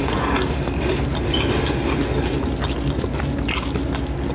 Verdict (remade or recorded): recorded